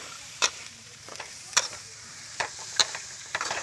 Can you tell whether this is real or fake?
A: fake